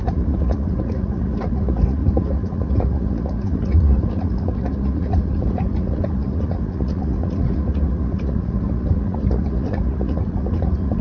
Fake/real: fake